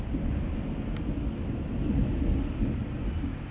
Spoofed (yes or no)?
no